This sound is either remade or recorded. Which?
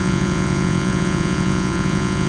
remade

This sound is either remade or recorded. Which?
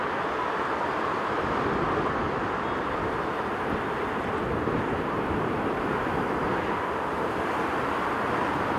recorded